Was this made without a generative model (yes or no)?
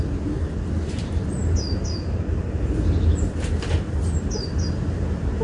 yes